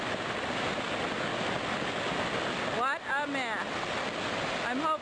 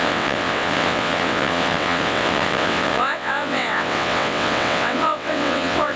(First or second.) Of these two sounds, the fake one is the second